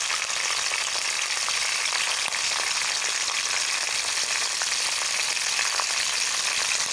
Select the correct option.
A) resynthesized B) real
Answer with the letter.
B